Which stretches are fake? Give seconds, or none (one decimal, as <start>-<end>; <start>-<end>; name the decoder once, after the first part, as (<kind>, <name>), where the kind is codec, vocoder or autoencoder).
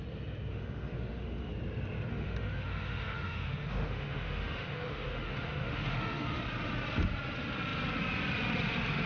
0.5-1.5 (autoencoder, DAC-VAE); 2.1-6.4